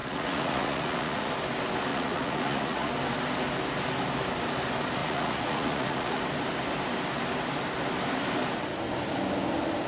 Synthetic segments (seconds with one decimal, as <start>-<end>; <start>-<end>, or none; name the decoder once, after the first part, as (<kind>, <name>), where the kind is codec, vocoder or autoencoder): 0.0-1.3 (vocoder, Vocos); 1.9-2.9; 5.0-6.2